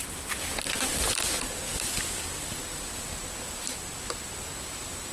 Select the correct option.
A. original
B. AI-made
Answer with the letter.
A